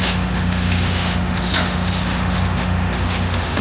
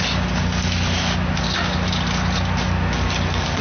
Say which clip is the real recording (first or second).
second